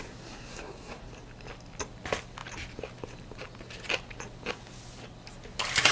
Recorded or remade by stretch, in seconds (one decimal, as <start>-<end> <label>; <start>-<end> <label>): 0.0-0.5 recorded; 0.5-1.0 remade; 1.0-5.9 recorded